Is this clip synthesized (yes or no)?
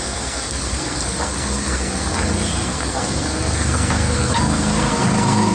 yes